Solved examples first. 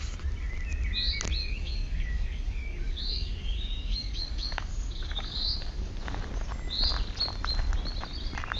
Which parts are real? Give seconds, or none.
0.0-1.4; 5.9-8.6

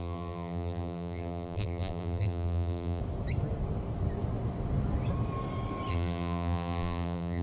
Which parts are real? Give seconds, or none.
3.0-5.9

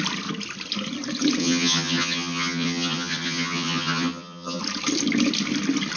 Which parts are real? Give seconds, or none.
0.0-1.4; 4.6-6.0

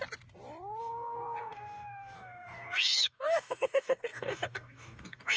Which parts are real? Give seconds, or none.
0.0-0.8